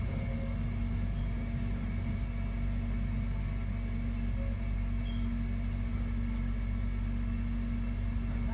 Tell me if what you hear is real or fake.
real